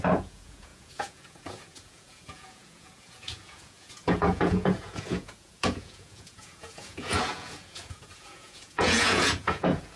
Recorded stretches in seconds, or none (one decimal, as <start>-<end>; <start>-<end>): none